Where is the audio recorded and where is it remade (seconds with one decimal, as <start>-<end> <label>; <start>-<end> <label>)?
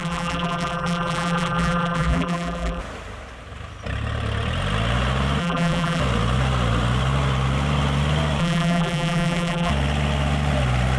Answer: 0.0-2.8 remade; 2.8-5.4 recorded; 5.4-6.0 remade; 6.0-8.4 recorded; 8.4-9.7 remade; 9.7-11.0 recorded